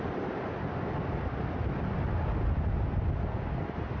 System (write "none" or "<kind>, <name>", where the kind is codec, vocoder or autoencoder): none